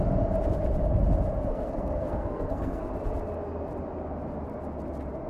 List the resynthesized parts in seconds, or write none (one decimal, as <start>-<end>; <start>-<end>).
1.5-2.9